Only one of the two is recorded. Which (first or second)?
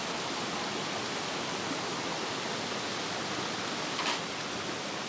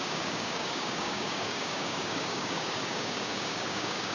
first